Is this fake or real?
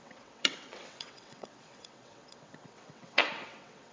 fake